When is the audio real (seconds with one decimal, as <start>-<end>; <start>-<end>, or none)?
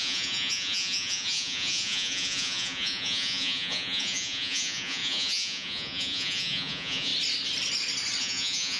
7.1-8.2